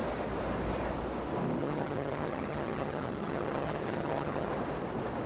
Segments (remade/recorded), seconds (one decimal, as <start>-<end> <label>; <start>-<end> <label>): 0.0-1.6 recorded; 1.6-4.5 remade; 4.5-5.3 recorded